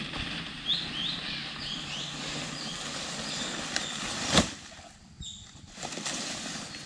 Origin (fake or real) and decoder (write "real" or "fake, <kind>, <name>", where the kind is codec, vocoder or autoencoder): real